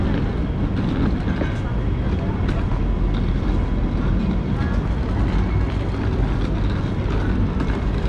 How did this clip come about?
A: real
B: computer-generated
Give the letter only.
A